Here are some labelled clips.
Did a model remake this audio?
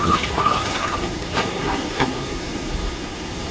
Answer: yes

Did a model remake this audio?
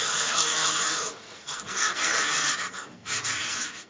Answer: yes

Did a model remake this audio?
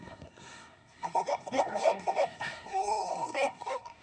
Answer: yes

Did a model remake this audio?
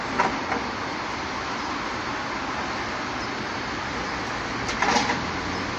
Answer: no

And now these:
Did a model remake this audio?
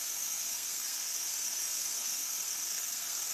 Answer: yes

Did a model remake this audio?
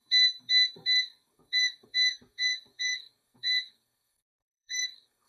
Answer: yes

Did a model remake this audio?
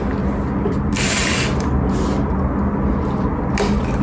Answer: no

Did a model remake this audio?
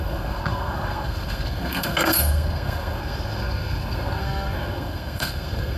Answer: yes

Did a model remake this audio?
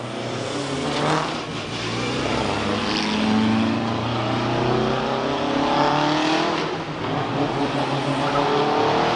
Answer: no